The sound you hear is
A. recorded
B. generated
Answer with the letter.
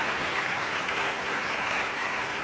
B